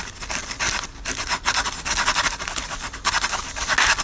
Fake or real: real